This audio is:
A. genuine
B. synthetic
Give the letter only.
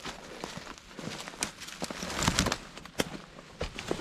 A